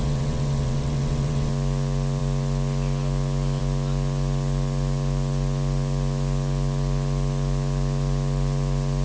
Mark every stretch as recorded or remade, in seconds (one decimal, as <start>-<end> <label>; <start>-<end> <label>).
0.0-1.5 remade; 1.5-9.0 recorded